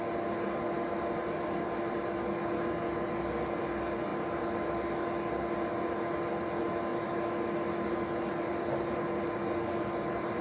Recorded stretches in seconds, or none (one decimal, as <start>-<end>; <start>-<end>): 0.0-10.4